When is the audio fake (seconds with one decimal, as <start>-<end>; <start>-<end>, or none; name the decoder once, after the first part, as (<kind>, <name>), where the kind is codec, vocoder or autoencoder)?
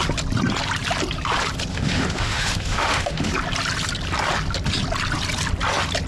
1.7-3.3 (autoencoder, DAC-VAE)